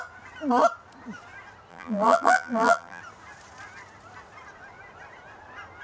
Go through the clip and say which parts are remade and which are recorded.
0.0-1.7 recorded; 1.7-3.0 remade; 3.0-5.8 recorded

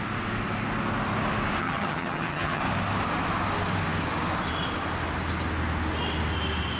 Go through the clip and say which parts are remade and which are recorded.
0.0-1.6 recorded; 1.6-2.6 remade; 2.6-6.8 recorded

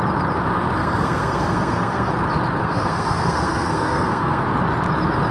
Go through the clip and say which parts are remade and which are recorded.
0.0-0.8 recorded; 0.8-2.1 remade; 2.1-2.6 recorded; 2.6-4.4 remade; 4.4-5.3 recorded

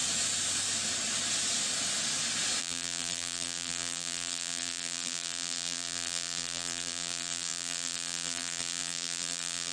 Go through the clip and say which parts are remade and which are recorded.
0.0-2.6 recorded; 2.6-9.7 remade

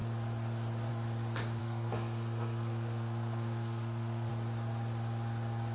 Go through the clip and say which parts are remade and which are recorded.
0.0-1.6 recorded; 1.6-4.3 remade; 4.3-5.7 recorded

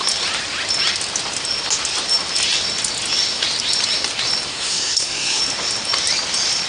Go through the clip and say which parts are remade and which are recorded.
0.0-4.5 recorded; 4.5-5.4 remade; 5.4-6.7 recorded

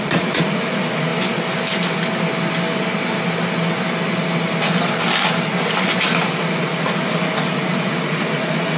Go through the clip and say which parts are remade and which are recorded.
0.0-1.1 remade; 1.1-6.3 recorded; 6.3-8.8 remade

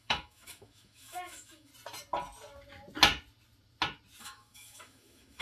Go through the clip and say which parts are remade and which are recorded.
0.0-1.7 remade; 1.7-4.2 recorded; 4.2-5.4 remade